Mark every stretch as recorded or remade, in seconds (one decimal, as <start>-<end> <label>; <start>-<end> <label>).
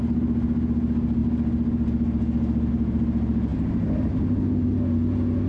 0.0-5.5 recorded